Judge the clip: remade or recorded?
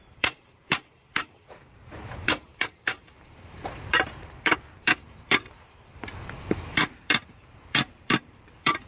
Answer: remade